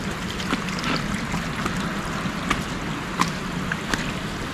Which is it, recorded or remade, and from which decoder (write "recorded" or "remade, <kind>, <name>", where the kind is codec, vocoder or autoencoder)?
recorded